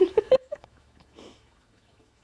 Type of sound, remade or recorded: remade